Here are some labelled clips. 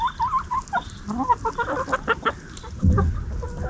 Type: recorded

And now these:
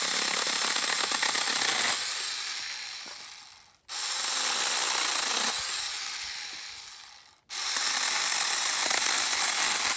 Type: recorded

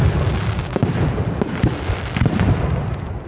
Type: recorded